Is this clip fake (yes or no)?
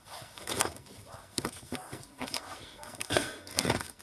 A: yes